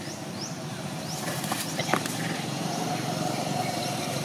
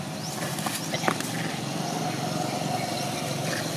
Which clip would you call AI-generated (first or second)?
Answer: first